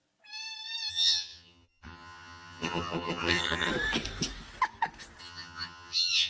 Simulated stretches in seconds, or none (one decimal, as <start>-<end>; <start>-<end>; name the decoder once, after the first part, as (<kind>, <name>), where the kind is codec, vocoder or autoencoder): 0.9-3.7 (vocoder, HiFi-GAN); 5.2-6.3